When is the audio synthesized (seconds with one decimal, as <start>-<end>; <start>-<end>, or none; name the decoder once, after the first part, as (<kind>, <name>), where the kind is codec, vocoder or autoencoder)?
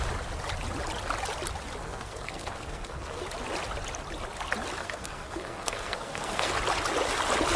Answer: 1.8-3.2 (codec, SNAC); 4.8-6.5